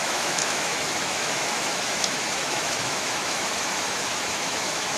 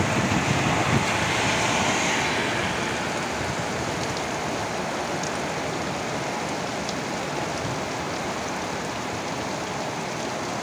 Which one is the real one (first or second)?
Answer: second